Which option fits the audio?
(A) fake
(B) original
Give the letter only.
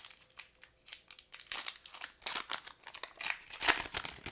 B